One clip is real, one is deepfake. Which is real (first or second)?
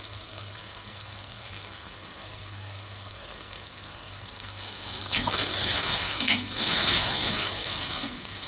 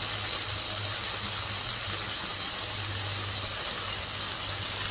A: second